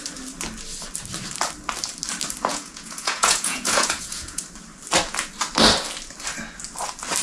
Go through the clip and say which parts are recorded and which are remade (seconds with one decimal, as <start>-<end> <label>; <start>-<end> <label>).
0.0-2.5 recorded; 2.5-4.4 remade; 4.4-7.2 recorded